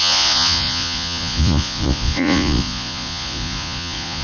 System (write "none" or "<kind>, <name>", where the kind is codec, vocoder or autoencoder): vocoder, Vocos